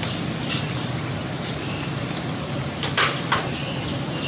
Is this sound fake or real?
real